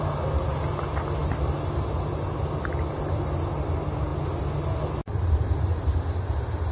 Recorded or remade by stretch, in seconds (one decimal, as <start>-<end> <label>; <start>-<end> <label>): 0.0-6.7 recorded